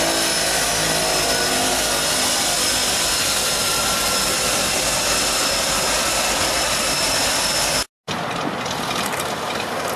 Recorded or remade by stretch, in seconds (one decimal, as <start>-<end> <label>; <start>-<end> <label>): 0.0-10.0 recorded